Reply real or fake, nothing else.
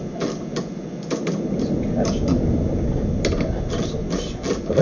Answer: real